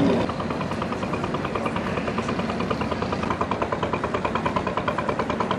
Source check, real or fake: real